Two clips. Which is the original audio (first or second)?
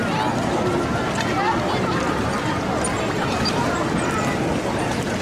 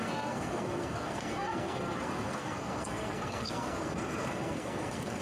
first